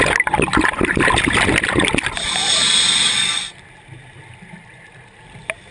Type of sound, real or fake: real